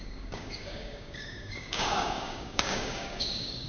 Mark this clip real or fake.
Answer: fake